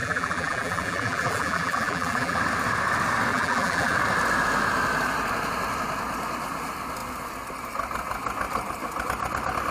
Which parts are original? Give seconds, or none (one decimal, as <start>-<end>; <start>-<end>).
2.4-3.3; 4.0-9.7